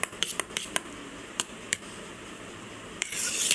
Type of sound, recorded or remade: remade